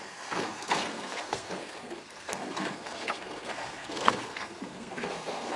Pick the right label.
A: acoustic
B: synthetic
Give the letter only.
B